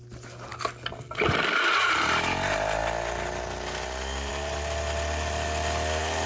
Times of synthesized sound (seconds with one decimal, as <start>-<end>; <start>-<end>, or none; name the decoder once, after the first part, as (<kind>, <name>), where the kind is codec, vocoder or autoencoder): none

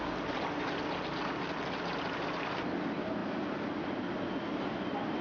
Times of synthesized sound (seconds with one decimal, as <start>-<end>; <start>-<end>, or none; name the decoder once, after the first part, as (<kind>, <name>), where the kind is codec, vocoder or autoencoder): none

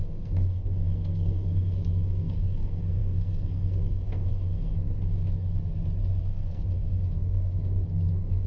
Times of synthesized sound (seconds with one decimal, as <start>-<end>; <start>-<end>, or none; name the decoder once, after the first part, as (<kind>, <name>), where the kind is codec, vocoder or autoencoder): 0.0-4.7 (codec, SNAC); 6.2-8.5